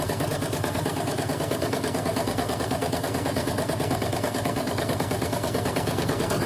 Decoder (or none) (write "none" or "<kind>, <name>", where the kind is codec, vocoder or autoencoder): codec, SNAC